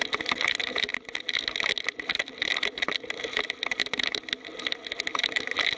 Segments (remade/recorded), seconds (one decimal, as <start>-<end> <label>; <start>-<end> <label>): 0.0-5.8 recorded